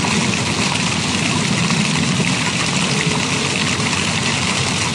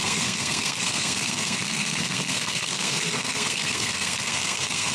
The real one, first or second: first